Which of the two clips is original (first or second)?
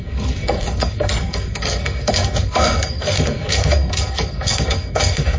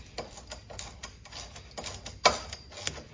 second